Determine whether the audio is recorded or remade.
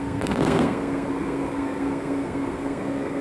remade